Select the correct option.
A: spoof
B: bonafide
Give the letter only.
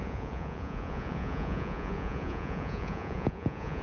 A